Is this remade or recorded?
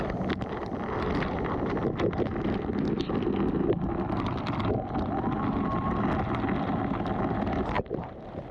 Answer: recorded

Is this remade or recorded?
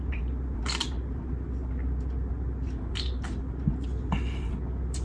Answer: recorded